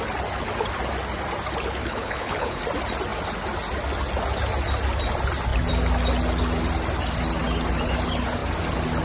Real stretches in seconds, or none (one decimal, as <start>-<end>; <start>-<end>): 0.0-1.8; 2.6-9.0